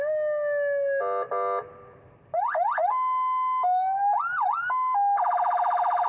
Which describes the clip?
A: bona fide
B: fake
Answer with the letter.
A